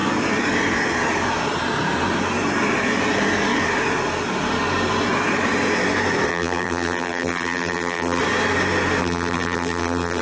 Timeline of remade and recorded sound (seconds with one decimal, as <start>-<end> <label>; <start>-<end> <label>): 0.0-6.3 recorded; 6.3-8.2 remade; 8.2-9.0 recorded; 9.0-10.2 remade